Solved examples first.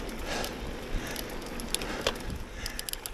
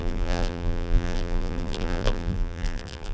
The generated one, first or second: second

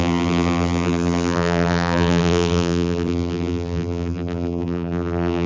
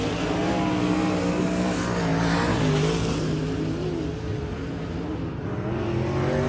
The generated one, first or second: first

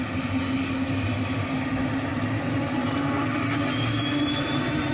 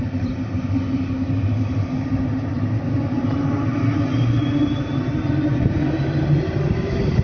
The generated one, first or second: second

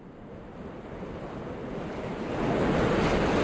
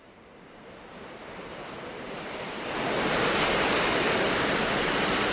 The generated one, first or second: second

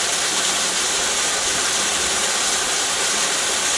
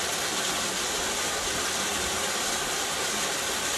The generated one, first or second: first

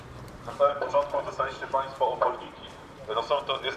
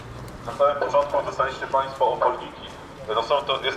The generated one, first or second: first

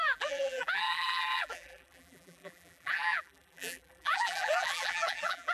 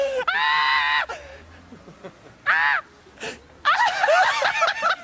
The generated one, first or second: first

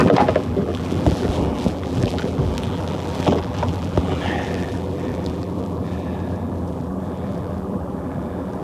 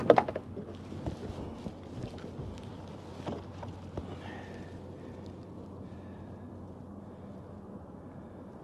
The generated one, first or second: first